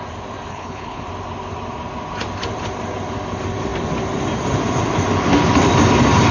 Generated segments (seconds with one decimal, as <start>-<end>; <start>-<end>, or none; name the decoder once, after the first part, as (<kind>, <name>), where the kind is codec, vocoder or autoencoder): 0.5-1.0 (codec, HILCodec)